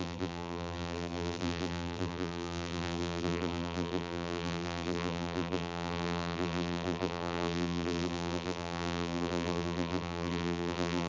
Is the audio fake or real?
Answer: fake